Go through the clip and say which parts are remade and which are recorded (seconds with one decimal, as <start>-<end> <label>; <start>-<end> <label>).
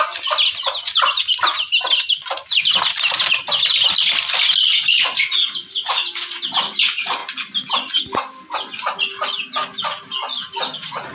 0.0-11.1 recorded